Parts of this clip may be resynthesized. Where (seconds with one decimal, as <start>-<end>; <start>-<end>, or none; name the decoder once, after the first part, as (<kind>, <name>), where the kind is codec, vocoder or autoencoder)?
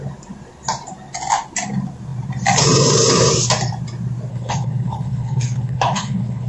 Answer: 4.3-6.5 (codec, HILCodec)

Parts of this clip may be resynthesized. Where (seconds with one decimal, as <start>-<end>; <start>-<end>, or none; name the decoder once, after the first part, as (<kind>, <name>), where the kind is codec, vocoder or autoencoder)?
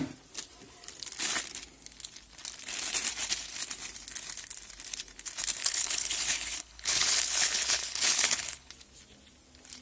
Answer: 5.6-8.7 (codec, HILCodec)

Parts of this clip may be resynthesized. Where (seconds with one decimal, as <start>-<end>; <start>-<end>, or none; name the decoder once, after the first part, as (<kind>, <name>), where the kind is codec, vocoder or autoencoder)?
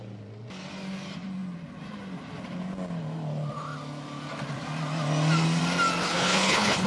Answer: 6.0-6.9 (codec, HILCodec)